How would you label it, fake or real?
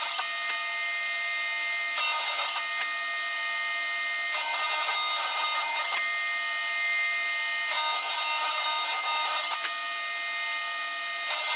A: real